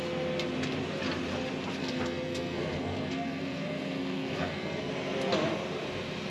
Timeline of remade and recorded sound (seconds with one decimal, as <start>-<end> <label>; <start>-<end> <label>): 0.0-1.8 recorded; 1.8-4.9 remade; 4.9-6.3 recorded